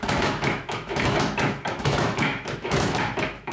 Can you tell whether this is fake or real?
fake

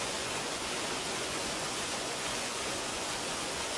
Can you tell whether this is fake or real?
fake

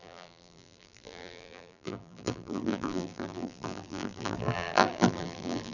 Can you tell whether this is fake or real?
fake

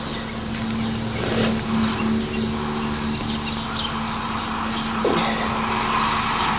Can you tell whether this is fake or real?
real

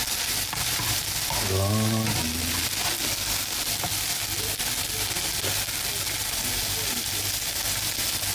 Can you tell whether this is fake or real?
real